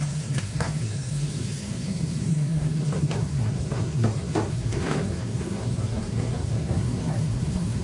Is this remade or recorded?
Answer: remade